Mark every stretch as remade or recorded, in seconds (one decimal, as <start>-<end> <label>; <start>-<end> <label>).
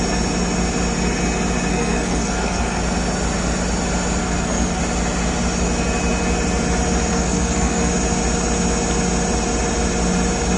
0.0-1.7 recorded; 1.7-2.8 remade; 2.8-4.2 recorded; 4.2-4.8 remade; 4.8-7.1 recorded; 7.1-7.9 remade; 7.9-10.6 recorded